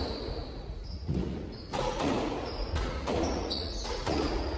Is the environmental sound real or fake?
fake